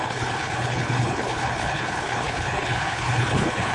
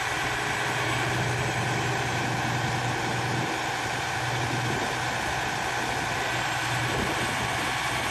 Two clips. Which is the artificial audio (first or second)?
first